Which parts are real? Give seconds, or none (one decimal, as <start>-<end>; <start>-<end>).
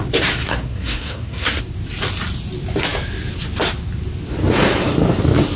0.0-0.5; 1.6-5.6